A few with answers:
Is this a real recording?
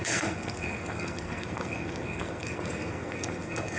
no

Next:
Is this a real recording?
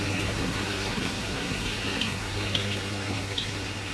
no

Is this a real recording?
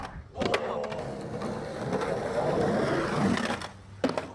yes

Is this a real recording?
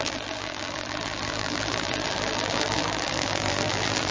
no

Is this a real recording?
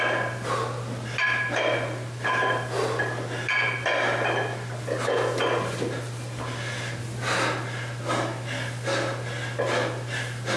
yes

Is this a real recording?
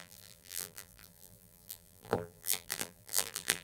no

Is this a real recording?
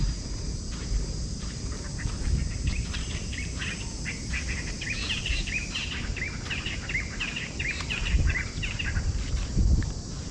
no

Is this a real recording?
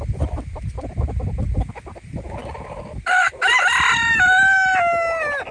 yes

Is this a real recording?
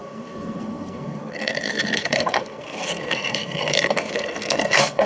no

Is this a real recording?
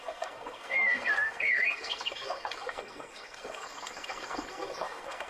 no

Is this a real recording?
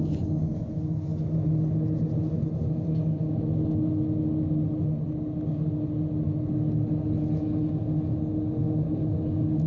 yes